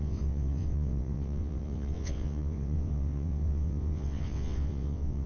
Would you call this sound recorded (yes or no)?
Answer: no